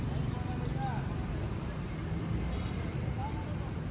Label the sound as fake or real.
real